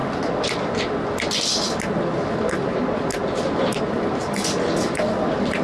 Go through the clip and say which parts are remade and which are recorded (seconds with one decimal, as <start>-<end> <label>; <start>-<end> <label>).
0.0-5.6 recorded